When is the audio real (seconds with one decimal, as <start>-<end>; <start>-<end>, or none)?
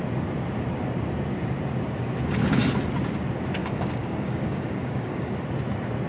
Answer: 0.0-3.6; 5.3-6.1